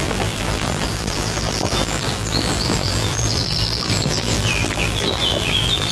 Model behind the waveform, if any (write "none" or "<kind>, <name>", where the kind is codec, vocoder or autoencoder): vocoder, BigVGAN v2